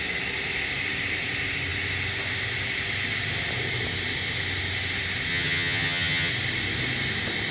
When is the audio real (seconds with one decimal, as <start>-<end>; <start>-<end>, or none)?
0.0-5.3; 6.3-7.5